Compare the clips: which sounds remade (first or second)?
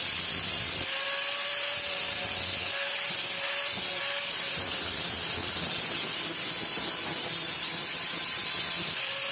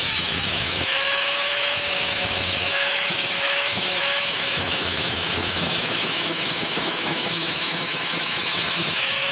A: second